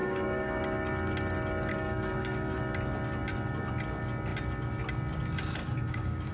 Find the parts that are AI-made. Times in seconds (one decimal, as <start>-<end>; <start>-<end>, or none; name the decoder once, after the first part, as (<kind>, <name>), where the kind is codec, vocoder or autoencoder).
0.0-0.6 (codec, DAC); 1.7-2.6; 5.6-6.3